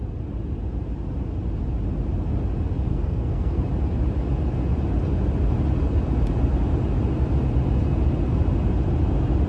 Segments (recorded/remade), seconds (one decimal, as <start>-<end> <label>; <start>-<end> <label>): 0.0-2.9 recorded; 2.9-3.6 remade; 3.6-9.5 recorded